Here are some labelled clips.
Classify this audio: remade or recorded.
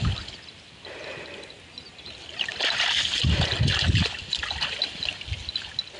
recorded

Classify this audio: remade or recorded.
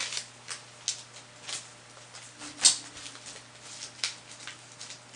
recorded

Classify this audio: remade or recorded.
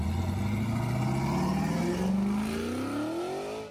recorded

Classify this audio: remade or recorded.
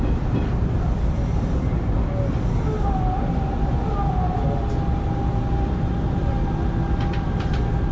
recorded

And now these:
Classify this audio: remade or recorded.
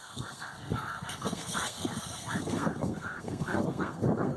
remade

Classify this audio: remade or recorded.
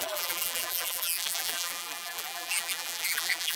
remade